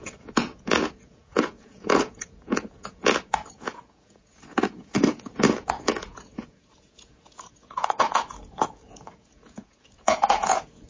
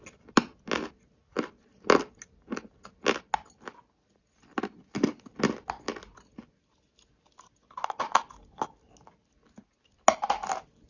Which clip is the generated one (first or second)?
first